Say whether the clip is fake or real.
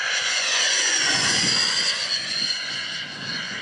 fake